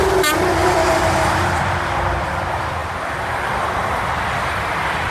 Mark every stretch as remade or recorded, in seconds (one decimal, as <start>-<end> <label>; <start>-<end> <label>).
0.0-0.6 recorded; 0.6-1.6 remade; 1.6-2.8 recorded; 2.8-5.1 remade